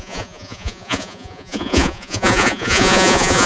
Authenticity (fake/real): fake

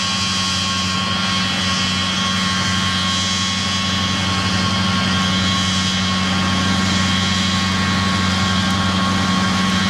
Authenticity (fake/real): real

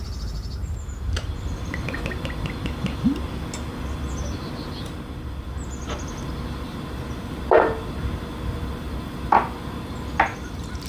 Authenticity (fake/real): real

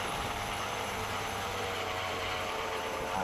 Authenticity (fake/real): fake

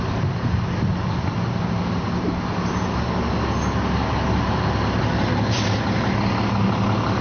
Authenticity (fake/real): real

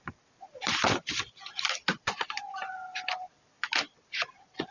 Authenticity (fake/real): fake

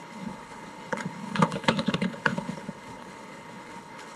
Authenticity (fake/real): fake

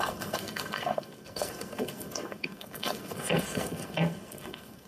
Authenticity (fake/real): fake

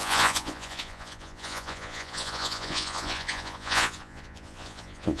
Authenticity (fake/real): fake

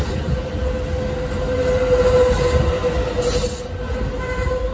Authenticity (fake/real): real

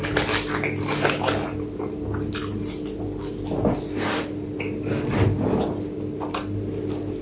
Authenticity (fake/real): real